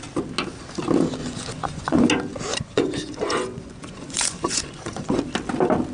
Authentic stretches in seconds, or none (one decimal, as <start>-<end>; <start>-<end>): 0.0-1.2; 2.1-2.5; 5.2-5.9